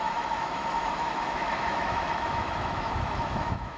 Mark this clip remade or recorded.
remade